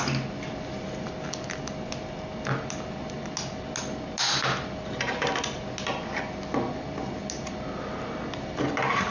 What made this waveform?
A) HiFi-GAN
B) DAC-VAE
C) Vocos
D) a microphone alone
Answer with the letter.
D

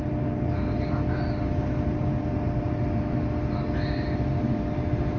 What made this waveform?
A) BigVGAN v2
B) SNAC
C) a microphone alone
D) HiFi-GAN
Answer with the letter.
C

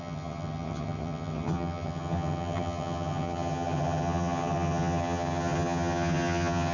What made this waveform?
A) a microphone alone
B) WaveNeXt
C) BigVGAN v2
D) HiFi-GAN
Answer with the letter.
D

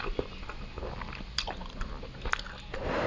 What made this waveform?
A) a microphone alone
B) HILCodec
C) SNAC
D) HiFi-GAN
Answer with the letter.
A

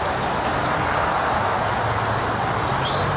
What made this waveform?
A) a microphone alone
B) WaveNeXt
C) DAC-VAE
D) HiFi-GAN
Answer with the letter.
A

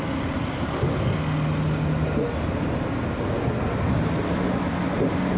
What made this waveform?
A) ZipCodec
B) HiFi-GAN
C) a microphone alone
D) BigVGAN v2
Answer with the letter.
C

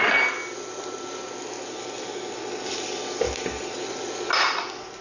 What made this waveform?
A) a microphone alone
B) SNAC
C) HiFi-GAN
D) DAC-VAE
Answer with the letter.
A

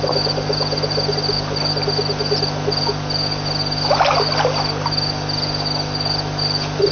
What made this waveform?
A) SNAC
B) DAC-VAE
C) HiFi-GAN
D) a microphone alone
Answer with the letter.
D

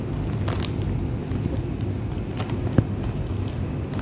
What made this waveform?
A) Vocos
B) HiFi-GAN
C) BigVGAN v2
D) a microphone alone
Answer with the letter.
D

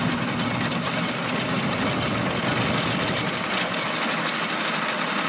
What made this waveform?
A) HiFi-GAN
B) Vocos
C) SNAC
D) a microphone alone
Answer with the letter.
D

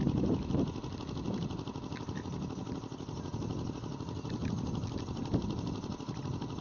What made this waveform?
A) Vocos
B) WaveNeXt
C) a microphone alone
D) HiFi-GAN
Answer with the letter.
C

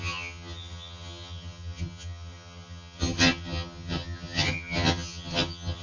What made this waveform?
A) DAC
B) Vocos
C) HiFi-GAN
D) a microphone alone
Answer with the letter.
C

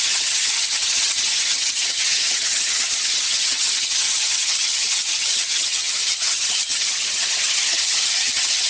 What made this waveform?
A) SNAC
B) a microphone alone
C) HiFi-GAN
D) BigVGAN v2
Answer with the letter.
C